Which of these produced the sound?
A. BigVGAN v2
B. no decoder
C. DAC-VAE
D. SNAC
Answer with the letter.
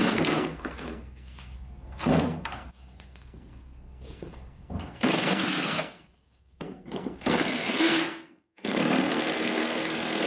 D